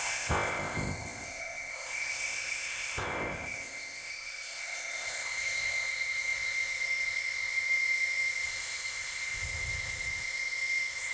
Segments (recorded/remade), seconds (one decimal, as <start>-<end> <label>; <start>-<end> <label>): 0.0-11.1 remade